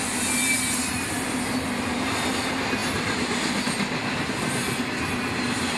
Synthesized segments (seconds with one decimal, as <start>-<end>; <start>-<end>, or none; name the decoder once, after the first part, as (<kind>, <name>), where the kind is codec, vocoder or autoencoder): none